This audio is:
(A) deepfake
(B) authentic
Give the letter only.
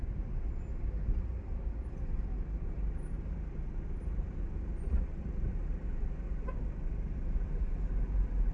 B